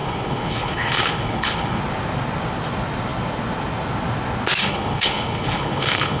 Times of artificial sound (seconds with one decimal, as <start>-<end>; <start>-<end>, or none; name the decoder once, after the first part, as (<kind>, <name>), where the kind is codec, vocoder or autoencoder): 0.0-1.8 (codec, HILCodec); 4.6-6.2